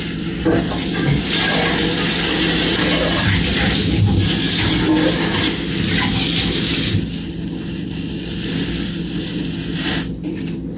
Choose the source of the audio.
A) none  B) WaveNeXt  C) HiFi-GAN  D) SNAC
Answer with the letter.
A